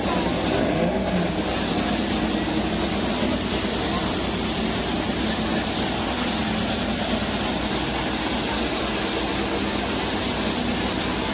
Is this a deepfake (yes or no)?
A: no